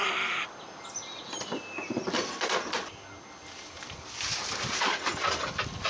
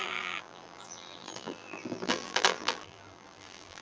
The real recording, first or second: first